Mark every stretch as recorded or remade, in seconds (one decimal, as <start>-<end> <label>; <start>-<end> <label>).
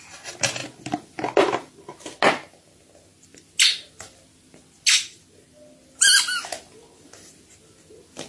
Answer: 0.0-8.3 recorded